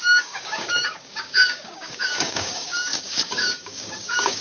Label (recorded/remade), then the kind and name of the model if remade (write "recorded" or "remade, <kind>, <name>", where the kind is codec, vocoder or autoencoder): remade, codec, DAC